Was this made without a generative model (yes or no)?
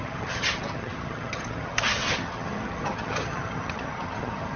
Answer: no